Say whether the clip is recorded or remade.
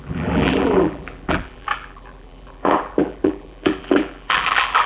remade